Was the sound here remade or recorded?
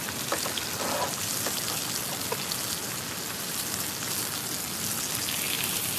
recorded